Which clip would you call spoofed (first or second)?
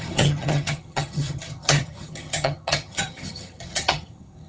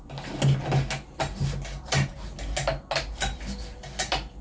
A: first